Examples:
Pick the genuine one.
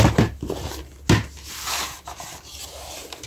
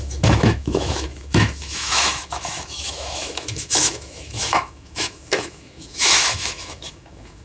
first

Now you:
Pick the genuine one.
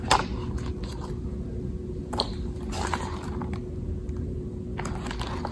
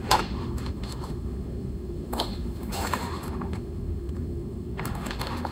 first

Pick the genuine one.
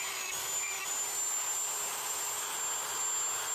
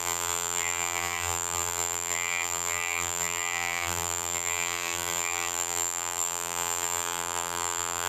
first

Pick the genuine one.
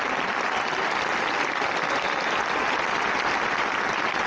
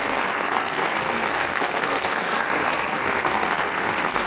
first